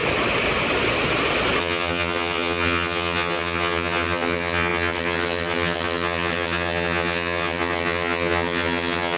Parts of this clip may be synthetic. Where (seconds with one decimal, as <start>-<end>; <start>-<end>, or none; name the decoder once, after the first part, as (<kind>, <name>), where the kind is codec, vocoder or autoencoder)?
1.6-9.2 (vocoder, HiFi-GAN)